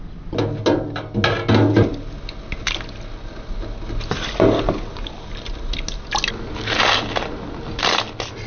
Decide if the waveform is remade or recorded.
recorded